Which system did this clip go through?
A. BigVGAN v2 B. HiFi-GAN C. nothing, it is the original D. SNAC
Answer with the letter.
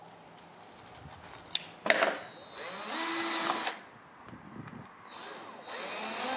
C